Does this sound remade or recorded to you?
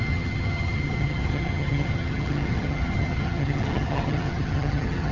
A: remade